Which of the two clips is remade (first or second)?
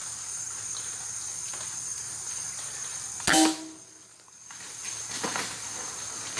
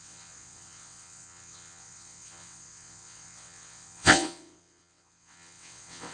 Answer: second